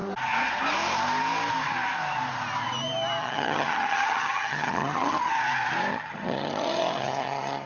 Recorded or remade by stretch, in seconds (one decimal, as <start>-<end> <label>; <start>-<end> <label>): 0.0-3.2 recorded; 3.2-5.3 remade; 5.3-5.9 recorded; 5.9-7.7 remade